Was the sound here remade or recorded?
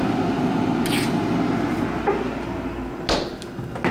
recorded